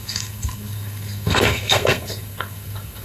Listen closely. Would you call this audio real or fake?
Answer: fake